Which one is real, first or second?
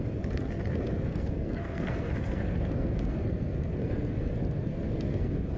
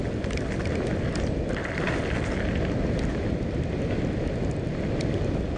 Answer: second